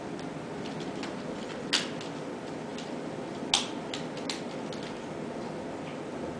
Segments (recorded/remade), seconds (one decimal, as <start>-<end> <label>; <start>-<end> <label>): 0.0-2.7 recorded; 2.7-3.2 remade; 3.2-6.4 recorded